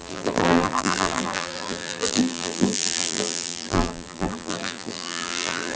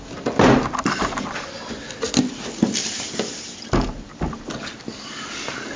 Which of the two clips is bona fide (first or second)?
second